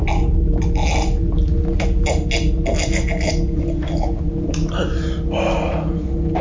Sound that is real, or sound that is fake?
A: real